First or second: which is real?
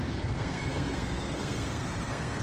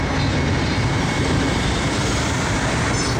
second